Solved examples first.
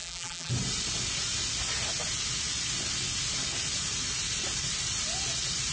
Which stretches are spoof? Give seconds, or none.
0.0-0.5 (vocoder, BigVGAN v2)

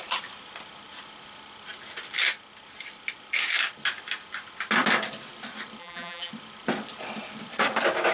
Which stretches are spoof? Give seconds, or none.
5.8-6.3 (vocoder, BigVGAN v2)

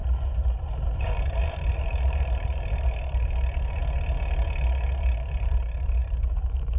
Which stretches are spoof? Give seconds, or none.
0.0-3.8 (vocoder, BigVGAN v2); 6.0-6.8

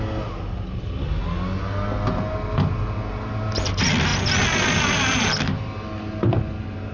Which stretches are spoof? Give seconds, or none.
none

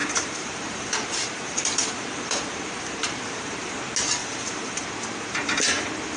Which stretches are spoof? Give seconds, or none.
0.0-3.7 (vocoder, BigVGAN v2); 4.2-4.8